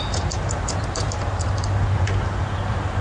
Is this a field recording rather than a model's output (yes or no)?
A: yes